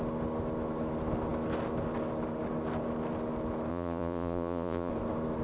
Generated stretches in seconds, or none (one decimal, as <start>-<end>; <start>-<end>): 3.7-4.9